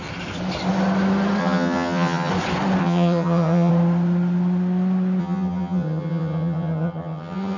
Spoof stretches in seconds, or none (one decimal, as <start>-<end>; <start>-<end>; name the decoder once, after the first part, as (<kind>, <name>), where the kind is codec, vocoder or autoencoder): 1.4-2.3 (vocoder, HiFi-GAN); 2.8-3.7; 5.2-7.6